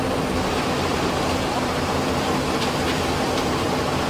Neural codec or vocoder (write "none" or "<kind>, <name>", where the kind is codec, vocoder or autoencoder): vocoder, BigVGAN v2